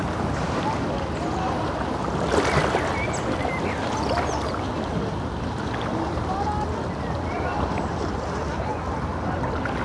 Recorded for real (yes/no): yes